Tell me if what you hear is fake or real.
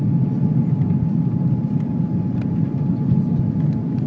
real